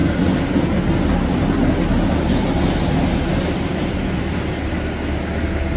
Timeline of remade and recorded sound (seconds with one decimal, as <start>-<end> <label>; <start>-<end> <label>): 0.0-5.8 recorded